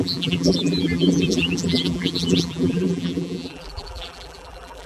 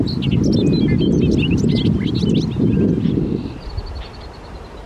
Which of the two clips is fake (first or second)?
first